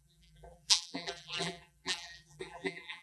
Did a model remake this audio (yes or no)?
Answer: yes